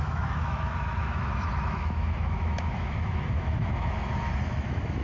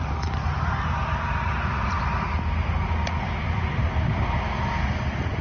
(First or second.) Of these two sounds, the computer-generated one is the first